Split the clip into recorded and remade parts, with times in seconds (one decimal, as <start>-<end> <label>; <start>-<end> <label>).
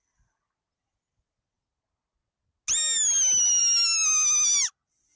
0.0-5.2 recorded